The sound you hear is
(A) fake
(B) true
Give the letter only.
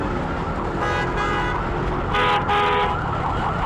B